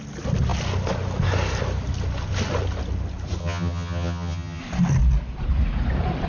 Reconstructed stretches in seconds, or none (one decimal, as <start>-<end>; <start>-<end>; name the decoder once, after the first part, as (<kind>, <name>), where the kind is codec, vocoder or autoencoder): 3.4-4.6 (vocoder, HiFi-GAN)